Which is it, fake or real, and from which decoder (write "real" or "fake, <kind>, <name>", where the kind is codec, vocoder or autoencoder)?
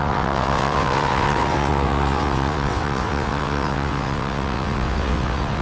fake, vocoder, WaveNeXt